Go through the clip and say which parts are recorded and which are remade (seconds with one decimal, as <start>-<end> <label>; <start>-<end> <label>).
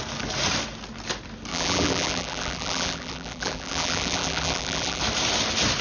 0.0-1.5 recorded; 1.5-5.0 remade; 5.0-5.8 recorded